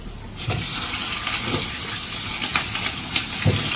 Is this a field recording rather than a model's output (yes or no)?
yes